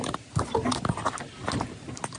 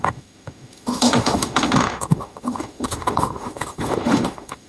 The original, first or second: first